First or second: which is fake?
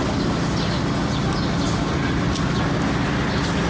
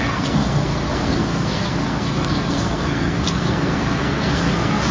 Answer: second